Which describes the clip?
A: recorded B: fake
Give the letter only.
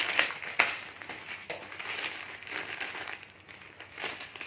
A